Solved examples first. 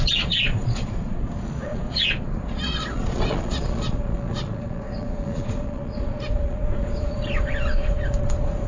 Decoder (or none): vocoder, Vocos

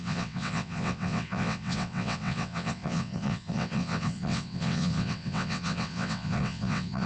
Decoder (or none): vocoder, WaveNeXt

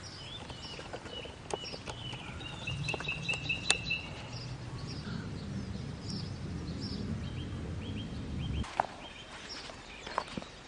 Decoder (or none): none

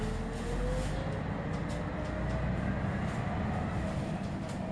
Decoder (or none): none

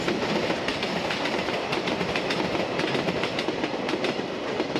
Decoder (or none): none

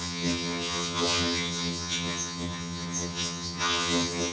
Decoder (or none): vocoder, HiFi-GAN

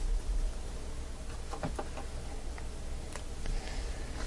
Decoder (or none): none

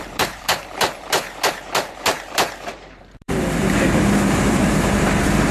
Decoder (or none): vocoder, BigVGAN v2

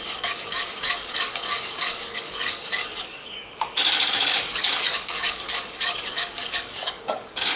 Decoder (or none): codec, DAC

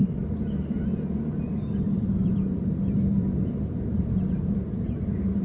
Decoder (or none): vocoder, BigVGAN v2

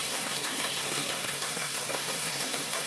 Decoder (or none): codec, SNAC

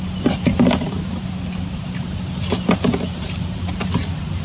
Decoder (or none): none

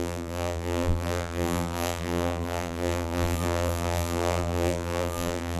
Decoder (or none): vocoder, BigVGAN v2